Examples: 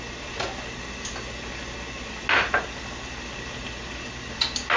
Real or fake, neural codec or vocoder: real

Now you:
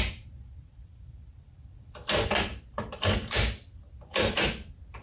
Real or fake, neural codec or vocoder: fake, vocoder, BigVGAN v2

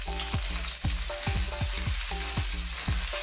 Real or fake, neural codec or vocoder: real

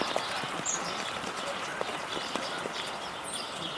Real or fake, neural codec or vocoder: real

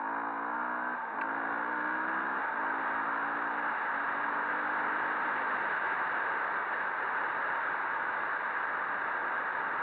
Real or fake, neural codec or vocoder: real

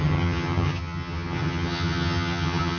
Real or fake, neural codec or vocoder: fake, vocoder, HiFi-GAN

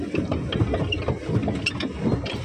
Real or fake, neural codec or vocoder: real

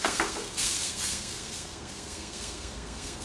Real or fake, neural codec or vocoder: fake, codec, SNAC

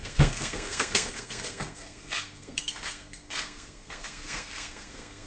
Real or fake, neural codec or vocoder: fake, codec, SNAC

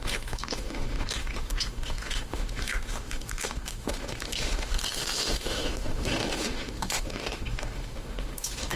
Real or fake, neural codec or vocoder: fake, autoencoder, DAC-VAE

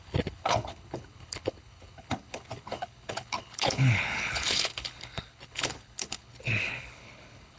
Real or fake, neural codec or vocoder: fake, codec, HILCodec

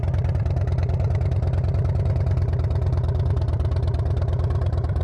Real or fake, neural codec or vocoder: real